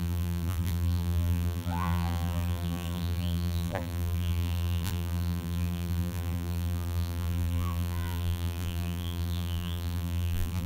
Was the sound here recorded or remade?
remade